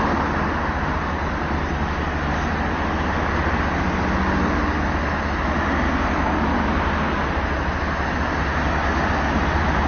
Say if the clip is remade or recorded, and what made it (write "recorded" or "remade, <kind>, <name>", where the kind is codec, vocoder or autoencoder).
recorded